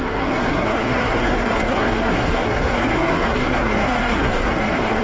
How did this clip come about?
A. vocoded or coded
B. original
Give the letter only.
A